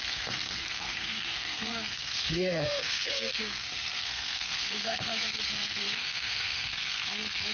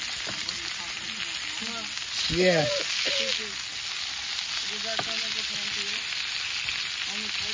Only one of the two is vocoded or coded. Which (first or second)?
first